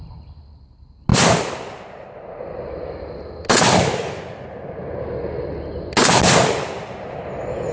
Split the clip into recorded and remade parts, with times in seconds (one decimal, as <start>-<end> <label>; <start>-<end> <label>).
0.0-7.7 recorded